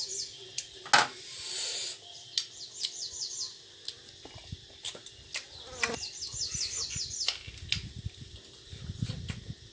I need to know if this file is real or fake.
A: real